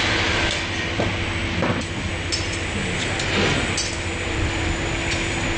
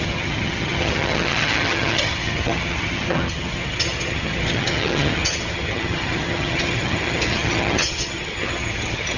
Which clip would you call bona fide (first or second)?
first